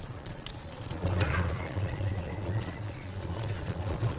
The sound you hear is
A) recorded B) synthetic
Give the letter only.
B